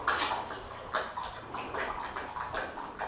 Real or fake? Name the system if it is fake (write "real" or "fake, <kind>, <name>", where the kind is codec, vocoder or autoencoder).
real